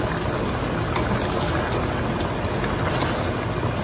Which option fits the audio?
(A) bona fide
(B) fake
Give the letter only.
A